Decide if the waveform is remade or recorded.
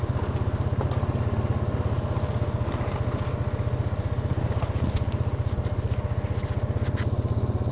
recorded